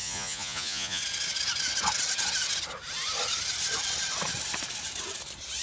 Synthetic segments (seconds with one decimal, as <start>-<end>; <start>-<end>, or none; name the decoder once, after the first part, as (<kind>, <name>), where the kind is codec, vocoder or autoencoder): 0.0-1.0 (vocoder, Vocos)